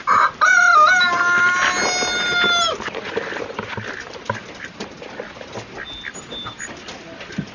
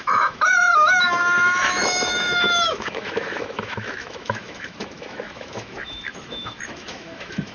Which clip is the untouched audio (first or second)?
first